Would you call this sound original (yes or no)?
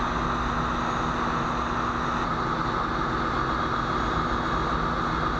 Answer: yes